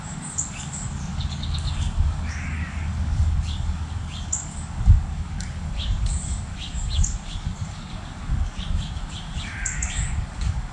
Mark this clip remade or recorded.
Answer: remade